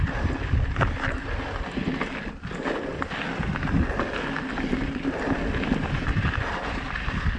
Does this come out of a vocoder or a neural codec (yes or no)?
no